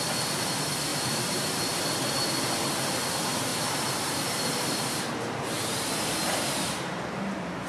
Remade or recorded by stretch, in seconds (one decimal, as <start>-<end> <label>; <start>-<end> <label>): 0.0-0.9 recorded; 0.9-1.8 remade; 1.8-3.5 recorded; 3.5-7.0 remade; 7.0-7.7 recorded